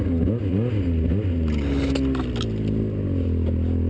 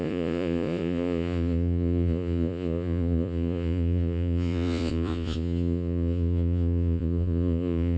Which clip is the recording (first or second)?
first